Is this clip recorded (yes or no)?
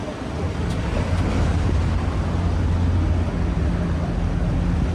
yes